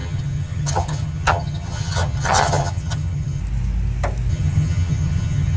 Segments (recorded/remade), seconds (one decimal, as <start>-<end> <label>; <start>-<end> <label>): 0.0-3.4 remade; 3.4-4.3 recorded; 4.3-5.6 remade